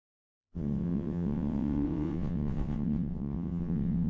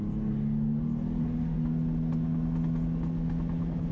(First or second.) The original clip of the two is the second